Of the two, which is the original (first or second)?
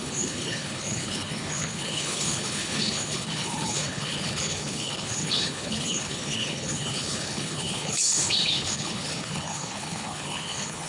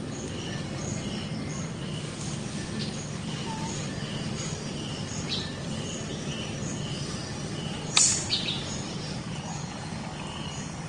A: second